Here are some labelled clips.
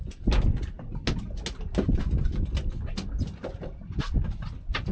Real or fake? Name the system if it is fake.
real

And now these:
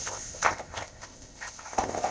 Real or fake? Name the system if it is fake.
fake, codec, ZipCodec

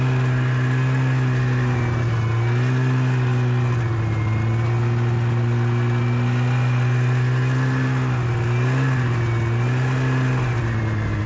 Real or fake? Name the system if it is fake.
real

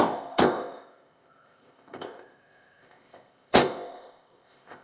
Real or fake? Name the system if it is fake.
fake, codec, ZipCodec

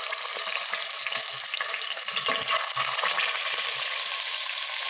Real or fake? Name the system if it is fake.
real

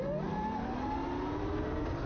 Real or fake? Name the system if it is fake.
real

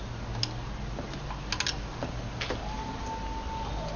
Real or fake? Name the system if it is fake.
real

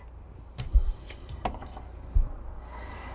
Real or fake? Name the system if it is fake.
real